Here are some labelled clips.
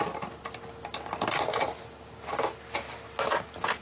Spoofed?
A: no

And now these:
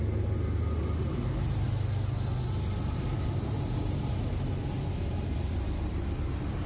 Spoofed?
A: no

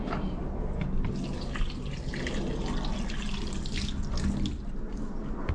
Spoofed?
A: no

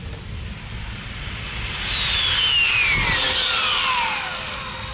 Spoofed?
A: no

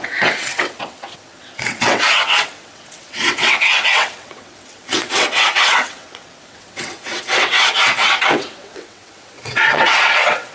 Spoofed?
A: yes